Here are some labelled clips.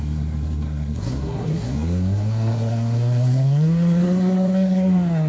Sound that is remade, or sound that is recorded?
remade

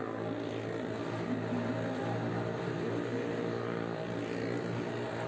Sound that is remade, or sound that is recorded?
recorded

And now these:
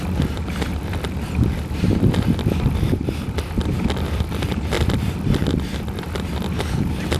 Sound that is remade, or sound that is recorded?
remade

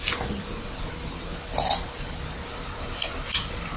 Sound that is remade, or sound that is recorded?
recorded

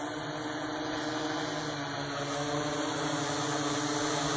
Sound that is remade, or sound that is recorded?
recorded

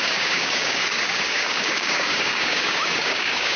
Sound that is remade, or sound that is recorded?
remade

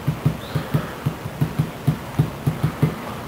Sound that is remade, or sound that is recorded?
recorded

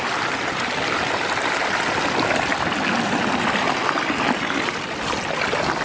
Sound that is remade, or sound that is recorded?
recorded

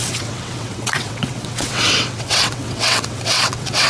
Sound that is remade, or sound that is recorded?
remade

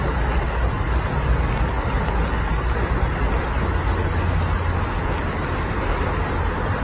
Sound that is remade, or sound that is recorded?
recorded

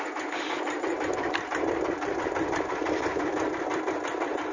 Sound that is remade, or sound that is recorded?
recorded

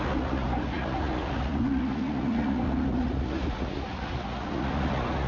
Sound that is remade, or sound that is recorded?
remade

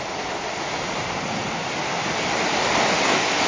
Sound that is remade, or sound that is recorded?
recorded